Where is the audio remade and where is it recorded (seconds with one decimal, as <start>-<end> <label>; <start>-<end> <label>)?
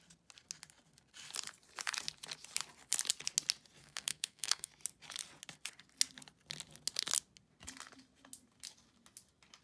0.0-3.8 recorded; 3.8-4.7 remade; 4.7-9.6 recorded